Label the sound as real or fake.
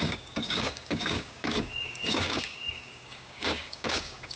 fake